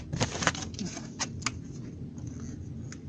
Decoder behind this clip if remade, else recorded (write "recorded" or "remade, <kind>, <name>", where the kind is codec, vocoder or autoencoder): recorded